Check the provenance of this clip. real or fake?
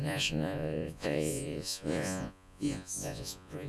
fake